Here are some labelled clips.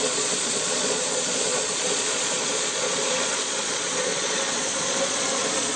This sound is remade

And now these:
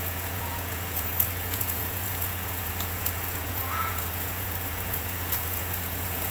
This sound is remade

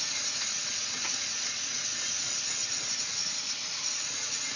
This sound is remade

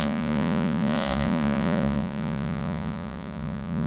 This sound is remade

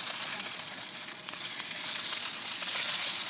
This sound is remade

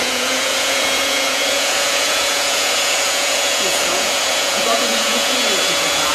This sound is remade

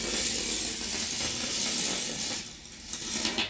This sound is recorded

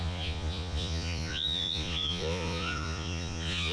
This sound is remade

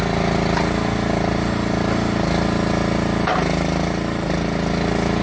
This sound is recorded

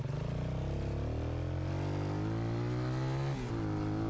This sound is recorded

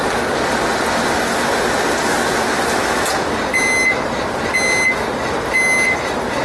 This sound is recorded